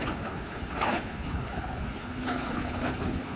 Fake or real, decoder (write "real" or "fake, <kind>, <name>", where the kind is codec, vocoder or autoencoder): fake, codec, HILCodec